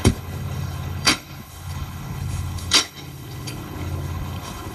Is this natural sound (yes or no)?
no